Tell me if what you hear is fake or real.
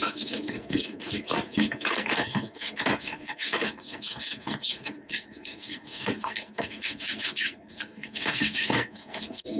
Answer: fake